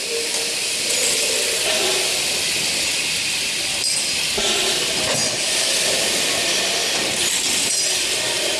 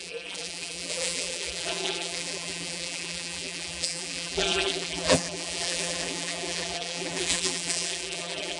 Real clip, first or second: first